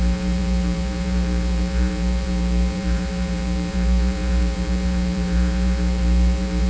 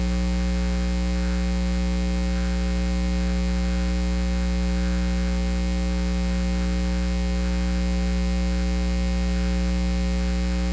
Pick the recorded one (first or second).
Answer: second